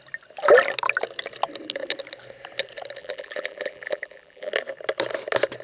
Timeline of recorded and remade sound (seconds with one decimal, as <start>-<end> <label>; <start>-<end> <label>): 0.0-3.0 recorded; 3.0-4.5 remade; 4.5-5.6 recorded